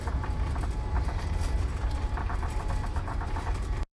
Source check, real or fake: fake